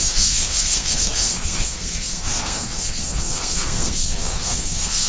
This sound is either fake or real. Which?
fake